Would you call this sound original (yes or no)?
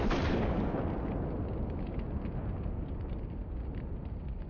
yes